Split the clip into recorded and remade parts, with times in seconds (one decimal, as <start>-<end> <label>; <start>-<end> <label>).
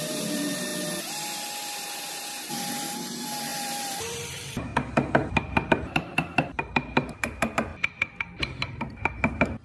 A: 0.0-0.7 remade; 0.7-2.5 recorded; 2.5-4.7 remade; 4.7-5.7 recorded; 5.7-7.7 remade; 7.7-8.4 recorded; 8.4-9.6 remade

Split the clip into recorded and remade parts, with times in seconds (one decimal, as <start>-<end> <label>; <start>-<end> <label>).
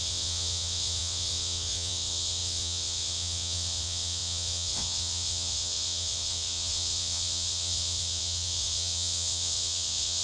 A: 0.0-10.2 remade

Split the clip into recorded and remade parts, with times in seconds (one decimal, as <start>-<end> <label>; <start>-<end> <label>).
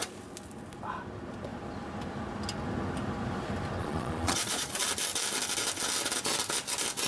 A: 0.0-3.8 recorded; 3.8-4.8 remade; 4.8-7.1 recorded